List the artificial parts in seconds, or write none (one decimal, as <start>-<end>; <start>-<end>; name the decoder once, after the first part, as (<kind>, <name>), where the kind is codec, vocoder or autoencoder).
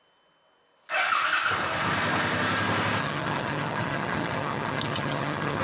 3.0-5.6 (vocoder, HiFi-GAN)